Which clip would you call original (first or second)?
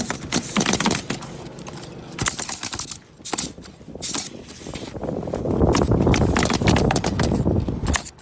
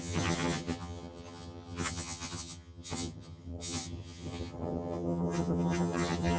first